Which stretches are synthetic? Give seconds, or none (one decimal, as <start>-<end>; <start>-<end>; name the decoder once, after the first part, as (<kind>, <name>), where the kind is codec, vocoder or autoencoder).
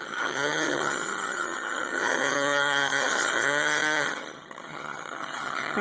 0.0-5.8 (vocoder, HiFi-GAN)